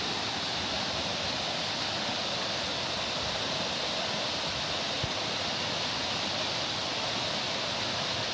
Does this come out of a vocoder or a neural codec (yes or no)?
no